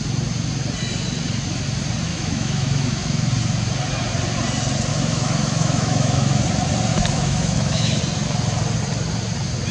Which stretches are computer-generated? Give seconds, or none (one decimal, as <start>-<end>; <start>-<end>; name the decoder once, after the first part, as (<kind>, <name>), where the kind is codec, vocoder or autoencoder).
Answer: 2.1-3.3 (autoencoder, DAC-VAE); 4.9-6.4; 6.9-8.0